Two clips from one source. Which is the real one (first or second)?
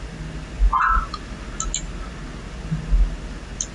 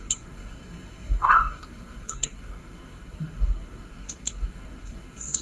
first